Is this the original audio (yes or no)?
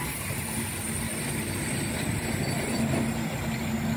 yes